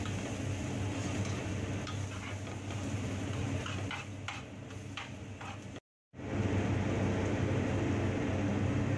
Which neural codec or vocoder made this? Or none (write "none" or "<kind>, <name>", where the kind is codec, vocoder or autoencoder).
none